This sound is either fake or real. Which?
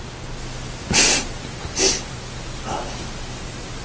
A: real